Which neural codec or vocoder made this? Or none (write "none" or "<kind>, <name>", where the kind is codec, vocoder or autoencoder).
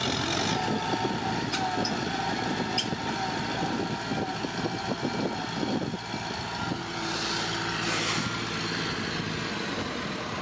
none